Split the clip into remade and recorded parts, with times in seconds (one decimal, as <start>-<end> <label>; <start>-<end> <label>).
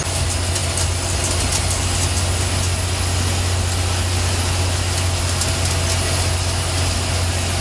0.0-7.6 recorded